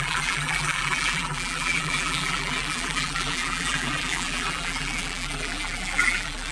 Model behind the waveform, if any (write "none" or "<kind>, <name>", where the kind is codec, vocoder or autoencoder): vocoder, BigVGAN v2